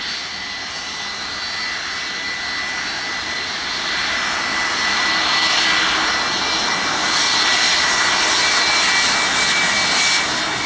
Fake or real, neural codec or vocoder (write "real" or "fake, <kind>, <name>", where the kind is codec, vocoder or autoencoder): real